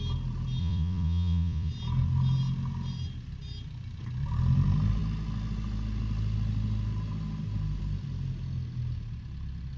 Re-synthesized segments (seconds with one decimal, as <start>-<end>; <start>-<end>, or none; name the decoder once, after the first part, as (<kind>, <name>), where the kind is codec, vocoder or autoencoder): 0.6-1.7 (vocoder, Vocos)